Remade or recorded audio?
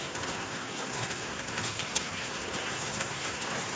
remade